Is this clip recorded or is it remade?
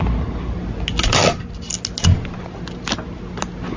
recorded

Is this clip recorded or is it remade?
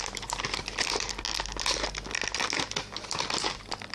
recorded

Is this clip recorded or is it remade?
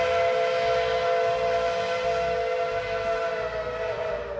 recorded